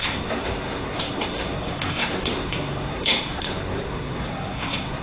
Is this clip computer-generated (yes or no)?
yes